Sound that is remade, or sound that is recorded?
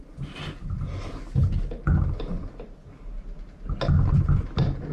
recorded